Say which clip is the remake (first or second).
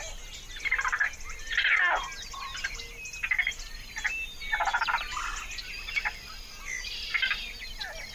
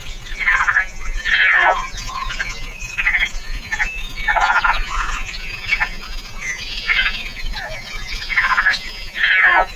second